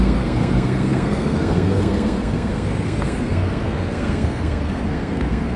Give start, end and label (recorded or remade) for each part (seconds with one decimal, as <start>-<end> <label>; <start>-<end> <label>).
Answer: 0.0-5.6 remade

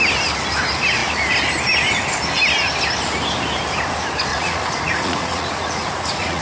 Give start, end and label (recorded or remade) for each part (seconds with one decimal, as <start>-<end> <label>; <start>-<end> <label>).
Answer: 0.0-4.3 recorded; 4.3-6.4 remade

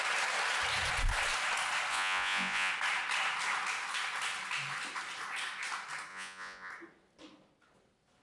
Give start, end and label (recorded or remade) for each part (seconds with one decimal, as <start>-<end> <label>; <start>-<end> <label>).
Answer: 0.0-1.9 recorded; 1.9-2.7 remade; 2.7-6.1 recorded; 6.1-6.7 remade; 6.7-8.2 recorded

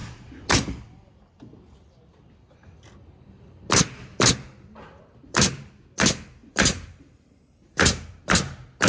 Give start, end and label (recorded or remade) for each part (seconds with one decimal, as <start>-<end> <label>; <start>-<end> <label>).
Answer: 0.0-6.4 recorded; 6.4-8.2 remade; 8.2-8.9 recorded

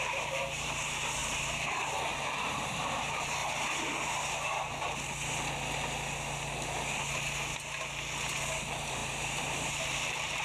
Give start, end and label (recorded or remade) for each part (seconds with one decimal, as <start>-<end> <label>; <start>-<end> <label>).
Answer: 0.0-3.4 remade; 3.4-8.6 recorded; 8.6-10.4 remade

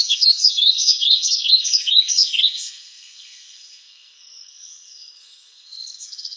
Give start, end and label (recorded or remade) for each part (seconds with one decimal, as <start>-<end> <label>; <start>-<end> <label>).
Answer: 0.0-6.4 remade